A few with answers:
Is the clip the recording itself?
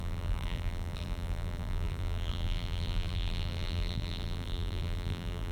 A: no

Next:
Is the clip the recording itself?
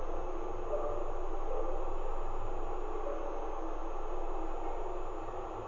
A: yes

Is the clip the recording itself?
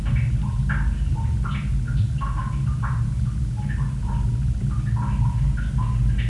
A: yes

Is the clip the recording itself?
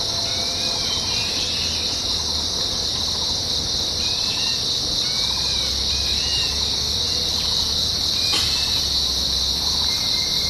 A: yes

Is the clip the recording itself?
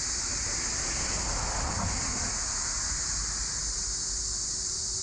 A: yes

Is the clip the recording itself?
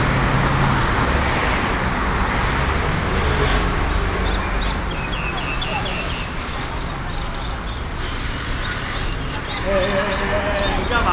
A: yes